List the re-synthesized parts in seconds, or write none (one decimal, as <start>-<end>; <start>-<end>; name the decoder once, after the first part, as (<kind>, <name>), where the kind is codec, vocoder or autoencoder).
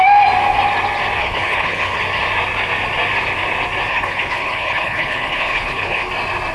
1.2-2.0 (codec, HILCodec); 3.9-6.1